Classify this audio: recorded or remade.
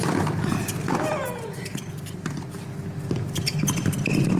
recorded